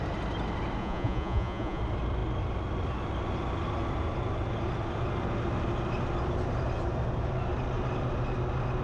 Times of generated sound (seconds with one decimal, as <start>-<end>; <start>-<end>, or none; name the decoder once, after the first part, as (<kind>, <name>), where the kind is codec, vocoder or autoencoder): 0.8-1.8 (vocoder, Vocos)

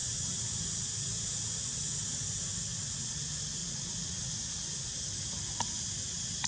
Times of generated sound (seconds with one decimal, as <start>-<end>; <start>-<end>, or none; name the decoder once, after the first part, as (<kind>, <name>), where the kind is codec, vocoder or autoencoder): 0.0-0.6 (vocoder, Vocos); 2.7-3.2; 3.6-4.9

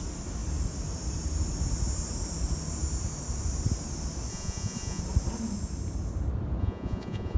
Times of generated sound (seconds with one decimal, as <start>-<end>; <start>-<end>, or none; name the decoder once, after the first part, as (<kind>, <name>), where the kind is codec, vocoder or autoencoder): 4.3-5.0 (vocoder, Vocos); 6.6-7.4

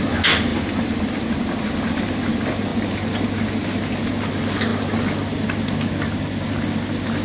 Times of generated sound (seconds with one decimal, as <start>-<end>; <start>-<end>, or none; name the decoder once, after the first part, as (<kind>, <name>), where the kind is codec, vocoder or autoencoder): none